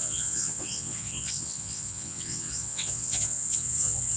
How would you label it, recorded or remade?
remade